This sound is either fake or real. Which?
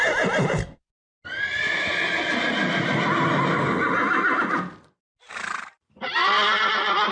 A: real